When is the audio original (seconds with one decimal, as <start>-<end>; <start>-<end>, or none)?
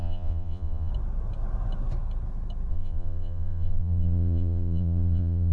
0.9-2.7